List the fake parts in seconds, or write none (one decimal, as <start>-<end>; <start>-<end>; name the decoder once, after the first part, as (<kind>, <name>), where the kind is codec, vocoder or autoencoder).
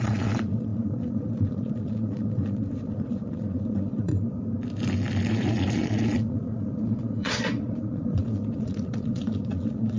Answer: 0.0-4.1 (vocoder, Vocos); 5.3-10.0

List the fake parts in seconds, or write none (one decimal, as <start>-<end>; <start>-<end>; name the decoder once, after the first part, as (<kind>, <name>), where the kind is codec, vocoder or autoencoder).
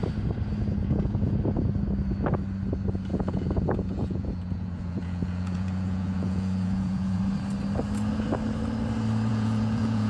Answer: 0.8-1.4 (vocoder, Vocos); 3.1-7.2; 9.3-10.1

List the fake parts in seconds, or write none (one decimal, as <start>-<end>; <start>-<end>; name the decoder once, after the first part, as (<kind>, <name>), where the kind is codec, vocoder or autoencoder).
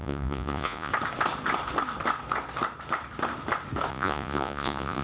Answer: 0.0-0.9 (vocoder, Vocos); 3.9-5.0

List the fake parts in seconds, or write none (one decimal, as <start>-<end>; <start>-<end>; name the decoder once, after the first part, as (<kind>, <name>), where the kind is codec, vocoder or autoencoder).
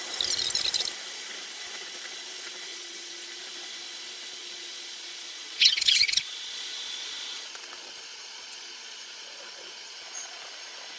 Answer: 2.7-3.4 (vocoder, Vocos); 4.4-7.6; 8.1-10.4